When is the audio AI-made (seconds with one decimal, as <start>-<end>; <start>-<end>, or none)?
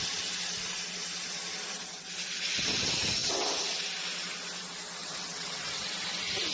5.0-5.8